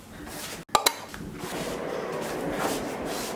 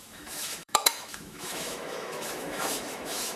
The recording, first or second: first